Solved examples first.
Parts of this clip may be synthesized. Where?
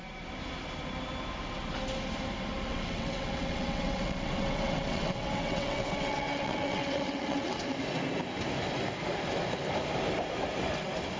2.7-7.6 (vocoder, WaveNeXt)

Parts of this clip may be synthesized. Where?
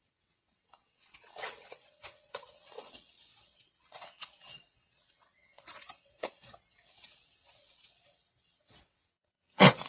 0.0-9.9 (vocoder, WaveNeXt)